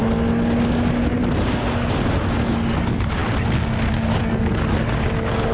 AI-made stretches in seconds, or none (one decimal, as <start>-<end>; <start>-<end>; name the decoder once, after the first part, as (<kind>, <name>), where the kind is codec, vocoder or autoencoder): 2.5-3.2 (codec, DAC); 3.9-5.5